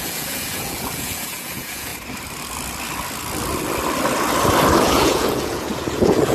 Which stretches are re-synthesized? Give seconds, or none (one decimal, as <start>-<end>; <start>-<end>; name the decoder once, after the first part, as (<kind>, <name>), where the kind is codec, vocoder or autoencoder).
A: 0.0-1.9 (vocoder, Vocos); 4.8-6.3